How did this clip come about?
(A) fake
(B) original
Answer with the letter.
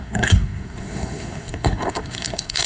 A